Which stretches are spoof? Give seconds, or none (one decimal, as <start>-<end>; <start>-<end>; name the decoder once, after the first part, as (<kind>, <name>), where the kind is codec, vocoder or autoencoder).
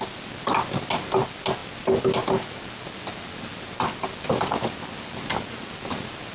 none